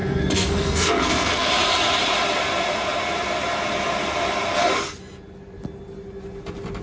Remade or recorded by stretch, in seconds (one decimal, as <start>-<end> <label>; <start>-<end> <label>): 0.0-1.5 remade; 1.5-6.8 recorded